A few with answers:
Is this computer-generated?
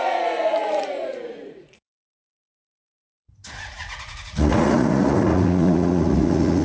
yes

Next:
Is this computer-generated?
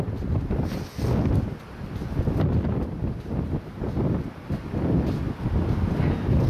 no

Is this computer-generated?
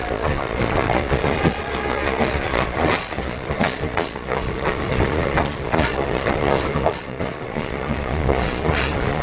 yes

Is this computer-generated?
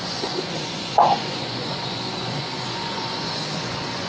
yes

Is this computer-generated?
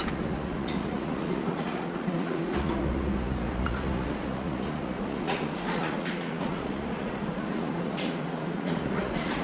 yes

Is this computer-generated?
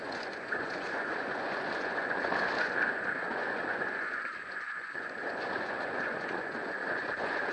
yes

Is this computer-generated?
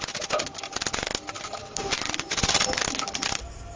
no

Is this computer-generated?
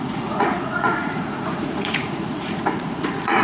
yes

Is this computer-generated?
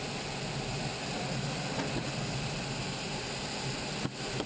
no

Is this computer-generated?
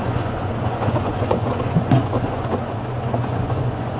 yes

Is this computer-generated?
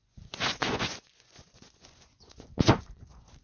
yes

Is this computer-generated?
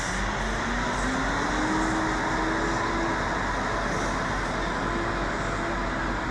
no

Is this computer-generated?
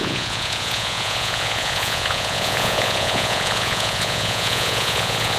yes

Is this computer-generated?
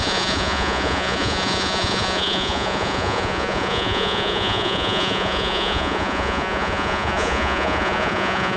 yes